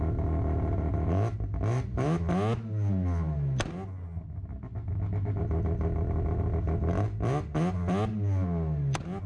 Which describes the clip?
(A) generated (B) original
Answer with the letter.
B